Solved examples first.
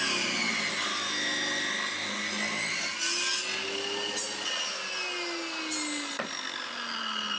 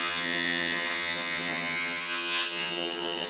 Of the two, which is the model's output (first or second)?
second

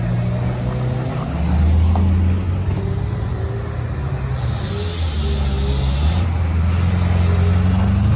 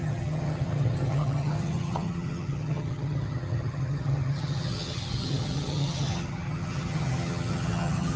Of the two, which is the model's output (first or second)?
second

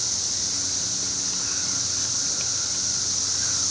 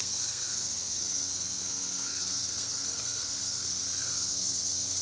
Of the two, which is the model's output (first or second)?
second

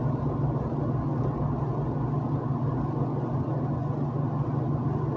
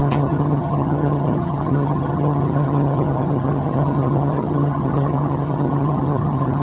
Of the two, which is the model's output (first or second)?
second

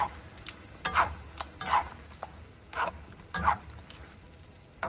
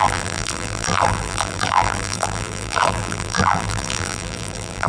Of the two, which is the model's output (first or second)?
second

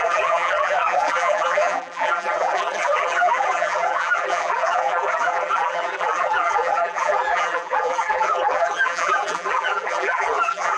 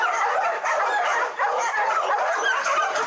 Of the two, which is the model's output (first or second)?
first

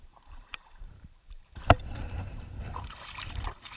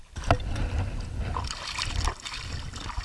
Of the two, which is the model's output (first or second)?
first